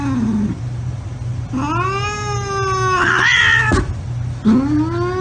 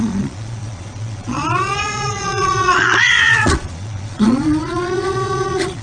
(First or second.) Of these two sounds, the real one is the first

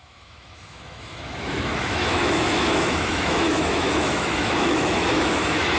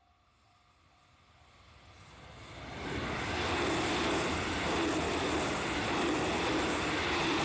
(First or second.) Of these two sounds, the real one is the second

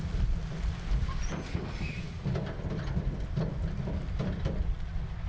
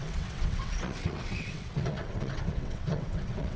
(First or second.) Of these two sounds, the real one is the first